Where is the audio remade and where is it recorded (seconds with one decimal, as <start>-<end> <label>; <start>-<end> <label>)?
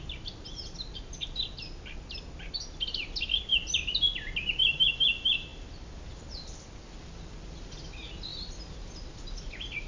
0.0-9.9 recorded